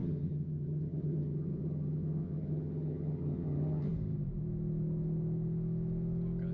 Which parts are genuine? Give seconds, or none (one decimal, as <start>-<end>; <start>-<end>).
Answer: 3.9-6.5